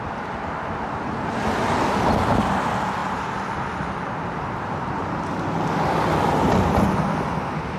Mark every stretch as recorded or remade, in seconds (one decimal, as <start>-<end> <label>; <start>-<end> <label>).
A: 0.0-7.8 recorded